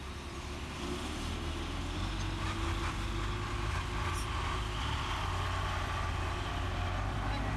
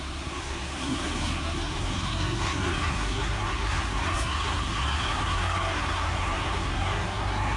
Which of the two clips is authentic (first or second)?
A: first